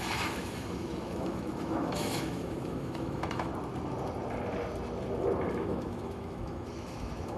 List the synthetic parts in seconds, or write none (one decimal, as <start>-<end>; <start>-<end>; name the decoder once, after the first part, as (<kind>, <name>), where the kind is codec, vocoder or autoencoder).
0.0-3.5 (autoencoder, DAC-VAE); 5.5-7.4